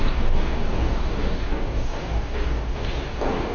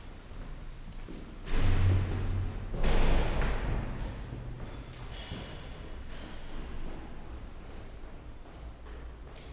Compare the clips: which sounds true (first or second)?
second